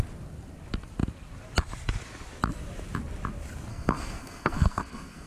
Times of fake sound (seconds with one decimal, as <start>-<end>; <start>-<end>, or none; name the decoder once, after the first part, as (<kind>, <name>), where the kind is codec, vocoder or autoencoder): 3.7-5.3 (codec, SNAC)